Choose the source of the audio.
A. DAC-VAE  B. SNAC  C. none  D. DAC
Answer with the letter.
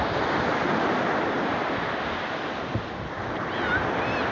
C